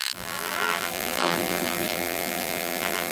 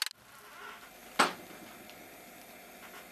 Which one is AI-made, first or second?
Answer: first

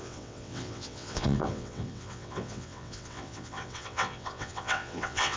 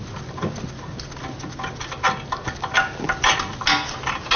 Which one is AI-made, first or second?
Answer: first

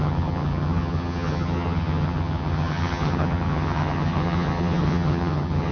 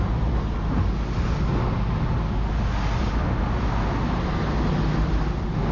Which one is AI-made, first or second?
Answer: first